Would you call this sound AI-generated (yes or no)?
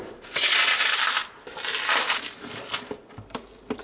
no